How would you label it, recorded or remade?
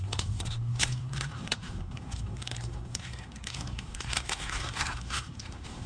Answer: remade